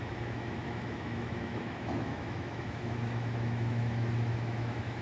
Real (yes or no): no